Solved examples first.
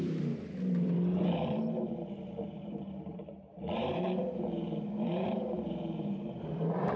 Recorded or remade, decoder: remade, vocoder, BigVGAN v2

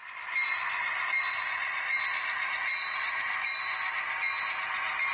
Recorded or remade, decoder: recorded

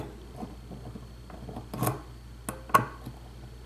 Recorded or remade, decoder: recorded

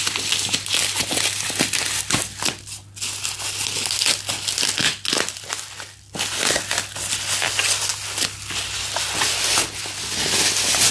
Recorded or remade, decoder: recorded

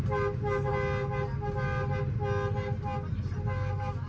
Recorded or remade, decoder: recorded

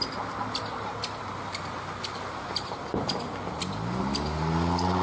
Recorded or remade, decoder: recorded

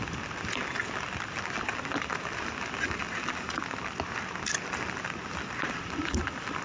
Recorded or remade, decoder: recorded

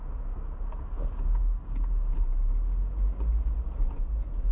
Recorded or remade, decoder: recorded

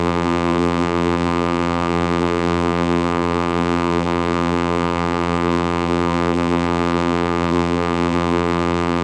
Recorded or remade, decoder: remade, vocoder, BigVGAN v2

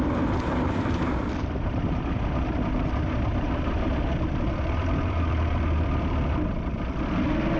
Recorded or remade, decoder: remade, vocoder, BigVGAN v2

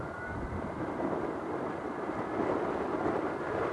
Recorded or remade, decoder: remade, vocoder, BigVGAN v2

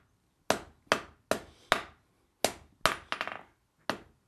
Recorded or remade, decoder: recorded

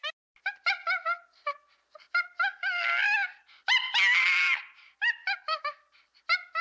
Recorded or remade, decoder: recorded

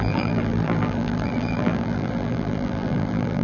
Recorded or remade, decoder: remade, vocoder, BigVGAN v2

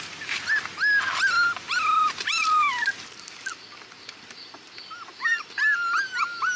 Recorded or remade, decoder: recorded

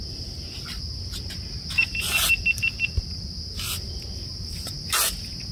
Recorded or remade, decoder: recorded